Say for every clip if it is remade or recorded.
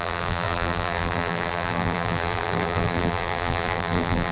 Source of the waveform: remade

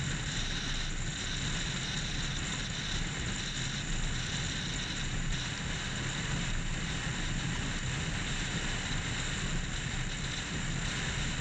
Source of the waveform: recorded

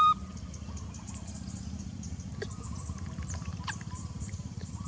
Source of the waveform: recorded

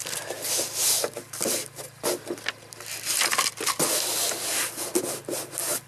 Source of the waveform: recorded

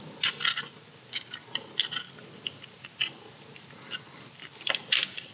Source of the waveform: recorded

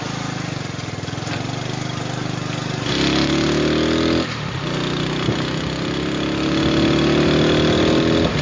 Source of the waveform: recorded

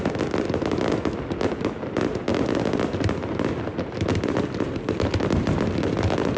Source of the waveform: recorded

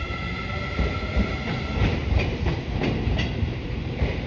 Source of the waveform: remade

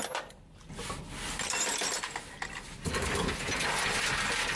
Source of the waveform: recorded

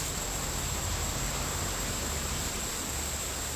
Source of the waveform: remade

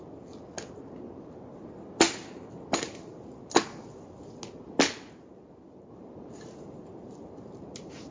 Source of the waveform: recorded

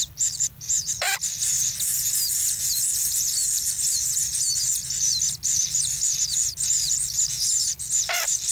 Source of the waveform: recorded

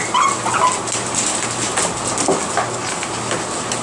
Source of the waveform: recorded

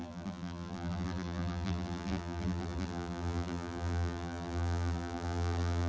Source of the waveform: remade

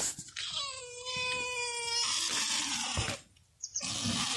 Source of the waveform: recorded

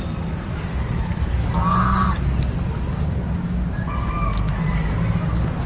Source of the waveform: recorded